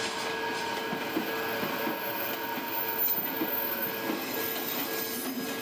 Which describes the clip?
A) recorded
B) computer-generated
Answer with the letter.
A